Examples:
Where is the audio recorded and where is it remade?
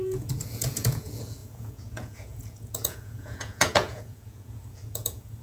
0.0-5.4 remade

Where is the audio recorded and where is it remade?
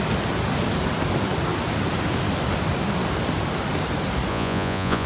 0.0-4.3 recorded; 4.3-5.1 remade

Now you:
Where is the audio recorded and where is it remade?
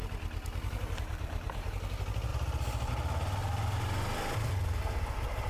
0.0-1.7 remade; 1.7-2.3 recorded; 2.3-2.9 remade; 2.9-3.4 recorded; 3.4-4.8 remade; 4.8-5.5 recorded